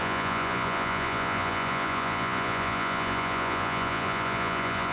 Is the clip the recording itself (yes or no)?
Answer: no